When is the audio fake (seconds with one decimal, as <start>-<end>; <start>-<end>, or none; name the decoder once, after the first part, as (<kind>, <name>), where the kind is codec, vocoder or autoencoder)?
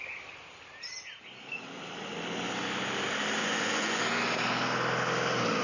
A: 3.4-4.0 (vocoder, Vocos)